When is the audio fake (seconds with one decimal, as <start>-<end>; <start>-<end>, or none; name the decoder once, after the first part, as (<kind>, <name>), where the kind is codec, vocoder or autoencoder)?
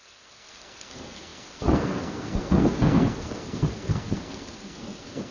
0.0-5.3 (codec, SNAC)